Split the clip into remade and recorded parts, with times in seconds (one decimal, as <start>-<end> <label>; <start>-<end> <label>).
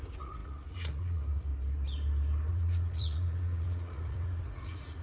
0.0-1.5 remade; 1.5-2.5 recorded; 2.5-5.0 remade